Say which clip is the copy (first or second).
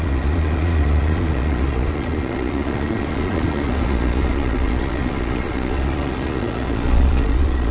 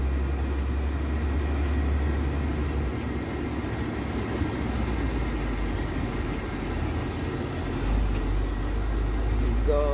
first